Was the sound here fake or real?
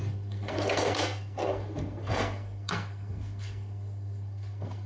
fake